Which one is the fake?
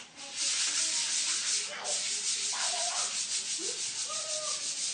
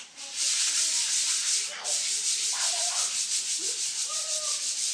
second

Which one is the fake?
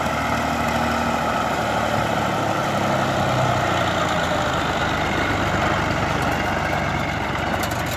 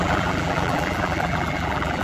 second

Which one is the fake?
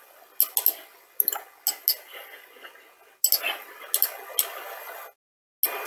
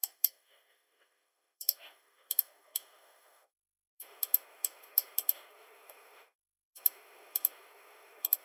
second